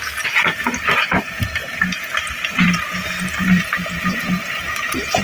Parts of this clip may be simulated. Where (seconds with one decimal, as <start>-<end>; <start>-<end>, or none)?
0.8-5.2